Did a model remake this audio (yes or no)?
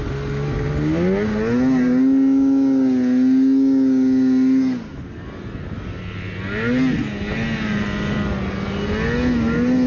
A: no